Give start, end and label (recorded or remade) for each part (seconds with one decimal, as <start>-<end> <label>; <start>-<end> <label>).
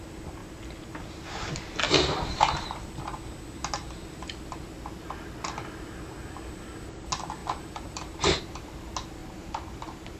0.0-7.4 recorded; 7.4-8.7 remade; 8.7-9.2 recorded; 9.2-10.2 remade